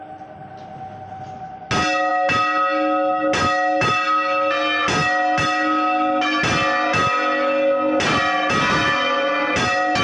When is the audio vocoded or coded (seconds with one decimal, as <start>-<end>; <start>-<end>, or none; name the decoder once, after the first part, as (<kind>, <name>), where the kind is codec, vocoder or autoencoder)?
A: none